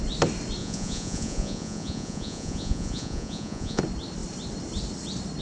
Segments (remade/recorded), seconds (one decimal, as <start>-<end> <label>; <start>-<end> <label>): 0.0-0.6 recorded; 0.6-3.8 remade; 3.8-5.4 recorded